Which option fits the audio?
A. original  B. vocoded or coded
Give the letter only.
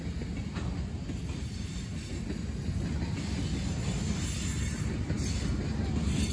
A